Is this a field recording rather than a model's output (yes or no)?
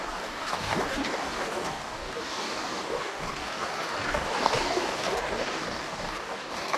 no